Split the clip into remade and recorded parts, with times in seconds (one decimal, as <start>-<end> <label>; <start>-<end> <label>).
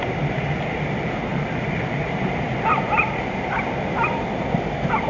0.0-1.3 recorded; 1.3-3.3 remade; 3.3-5.1 recorded